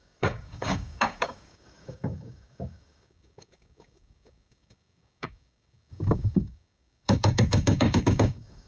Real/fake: fake